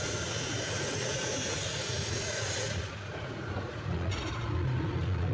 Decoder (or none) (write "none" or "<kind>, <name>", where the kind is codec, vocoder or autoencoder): vocoder, Vocos